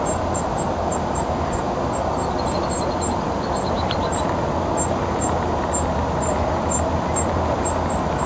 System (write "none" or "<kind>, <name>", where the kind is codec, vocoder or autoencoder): none